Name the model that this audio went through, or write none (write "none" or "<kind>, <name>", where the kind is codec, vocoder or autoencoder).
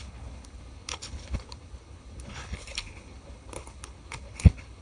codec, HILCodec